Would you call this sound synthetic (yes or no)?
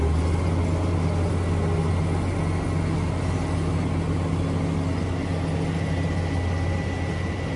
no